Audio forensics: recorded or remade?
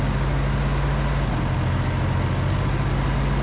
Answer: recorded